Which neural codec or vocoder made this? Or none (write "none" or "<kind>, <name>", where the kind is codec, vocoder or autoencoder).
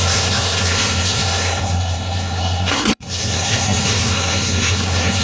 codec, SNAC